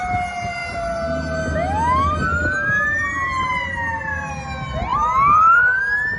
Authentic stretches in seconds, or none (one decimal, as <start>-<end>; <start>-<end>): 0.0-4.9; 5.8-6.2